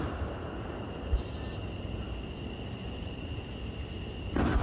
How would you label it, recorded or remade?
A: recorded